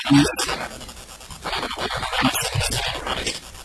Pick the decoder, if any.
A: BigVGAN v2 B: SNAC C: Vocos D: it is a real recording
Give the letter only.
D